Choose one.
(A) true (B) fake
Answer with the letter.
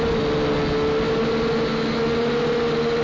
A